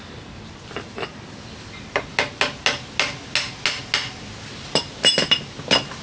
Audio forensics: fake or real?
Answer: real